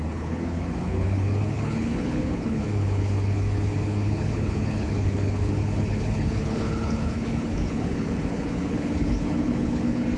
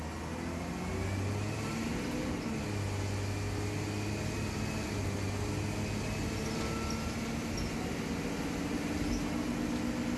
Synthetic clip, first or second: first